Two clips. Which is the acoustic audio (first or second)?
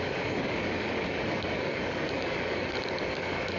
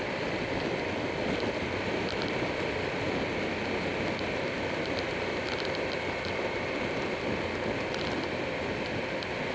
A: second